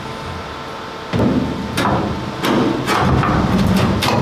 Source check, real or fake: real